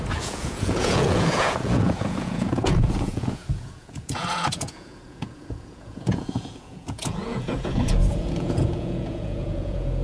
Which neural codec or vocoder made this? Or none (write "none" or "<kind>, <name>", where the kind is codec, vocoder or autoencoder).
vocoder, Vocos